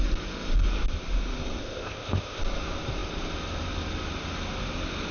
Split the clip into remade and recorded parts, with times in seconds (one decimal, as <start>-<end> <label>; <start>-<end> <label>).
0.0-1.6 recorded; 1.6-2.4 remade; 2.4-5.1 recorded